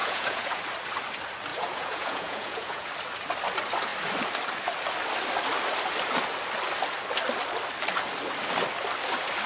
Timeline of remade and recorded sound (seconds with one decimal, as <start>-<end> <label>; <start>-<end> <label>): 0.0-0.6 remade; 0.6-1.5 recorded; 1.5-2.9 remade; 2.9-9.5 recorded